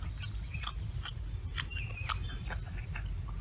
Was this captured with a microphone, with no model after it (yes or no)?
yes